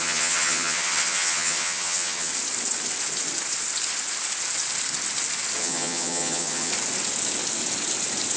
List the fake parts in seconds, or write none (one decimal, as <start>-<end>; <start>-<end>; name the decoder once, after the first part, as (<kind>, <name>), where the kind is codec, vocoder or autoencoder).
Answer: 0.0-2.3 (vocoder, HiFi-GAN); 5.6-6.7